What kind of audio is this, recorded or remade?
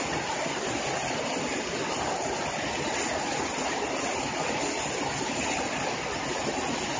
recorded